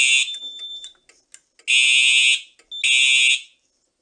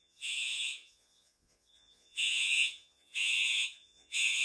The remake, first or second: second